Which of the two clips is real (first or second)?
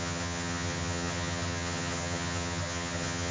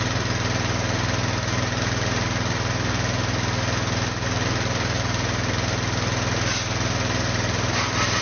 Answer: second